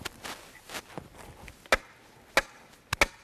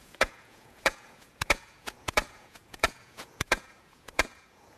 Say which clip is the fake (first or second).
second